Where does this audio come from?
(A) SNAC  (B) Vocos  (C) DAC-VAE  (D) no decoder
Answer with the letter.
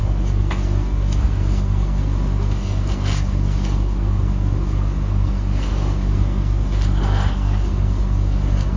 A